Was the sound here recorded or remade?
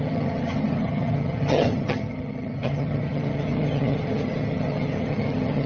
remade